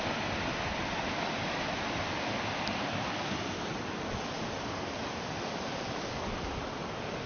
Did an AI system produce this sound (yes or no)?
no